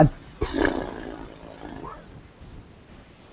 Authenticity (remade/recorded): recorded